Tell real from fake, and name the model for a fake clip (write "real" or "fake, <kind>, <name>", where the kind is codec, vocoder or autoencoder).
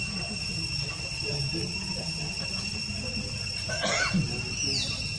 real